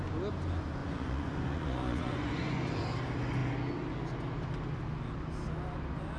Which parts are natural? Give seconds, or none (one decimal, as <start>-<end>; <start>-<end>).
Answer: 0.0-0.8; 2.7-6.2